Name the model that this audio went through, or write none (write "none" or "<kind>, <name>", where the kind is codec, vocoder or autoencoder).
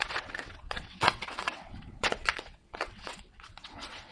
vocoder, WaveNeXt